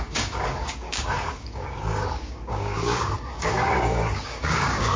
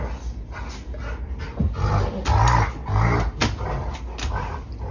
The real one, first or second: second